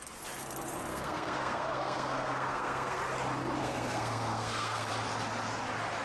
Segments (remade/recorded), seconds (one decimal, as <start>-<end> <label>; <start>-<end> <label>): 0.0-0.9 recorded; 0.9-3.0 remade; 3.0-3.6 recorded; 3.6-4.9 remade; 4.9-6.0 recorded